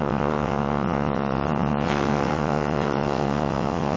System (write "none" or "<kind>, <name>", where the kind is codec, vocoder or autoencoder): vocoder, WaveNeXt